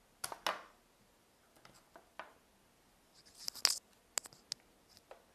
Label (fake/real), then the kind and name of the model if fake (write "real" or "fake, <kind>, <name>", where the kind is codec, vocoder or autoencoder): real